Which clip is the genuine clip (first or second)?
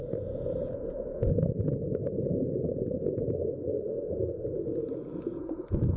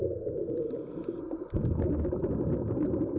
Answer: second